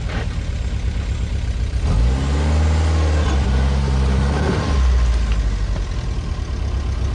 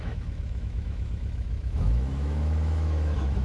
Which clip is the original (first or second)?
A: first